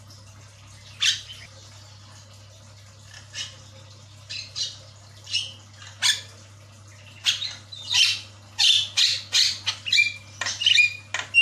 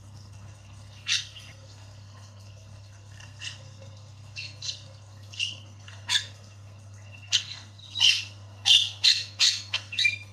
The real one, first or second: first